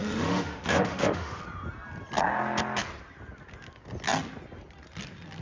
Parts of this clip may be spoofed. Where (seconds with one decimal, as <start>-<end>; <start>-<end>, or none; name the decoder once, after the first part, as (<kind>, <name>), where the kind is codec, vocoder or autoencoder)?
0.0-1.4 (autoencoder, DAC-VAE)